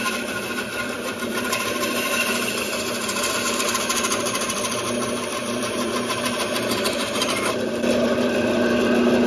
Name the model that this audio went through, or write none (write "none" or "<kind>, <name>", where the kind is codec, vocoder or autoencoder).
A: vocoder, BigVGAN v2